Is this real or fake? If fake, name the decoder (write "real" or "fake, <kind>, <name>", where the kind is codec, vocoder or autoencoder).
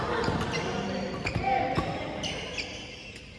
real